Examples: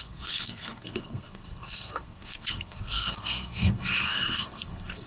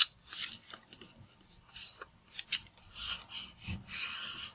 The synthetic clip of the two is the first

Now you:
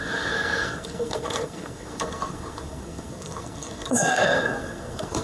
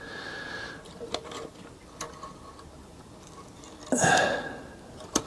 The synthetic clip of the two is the first